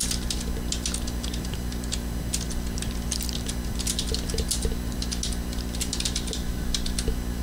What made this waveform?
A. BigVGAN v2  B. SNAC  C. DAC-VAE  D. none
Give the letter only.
D